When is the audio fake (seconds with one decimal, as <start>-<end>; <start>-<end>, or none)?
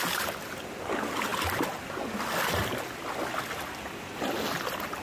none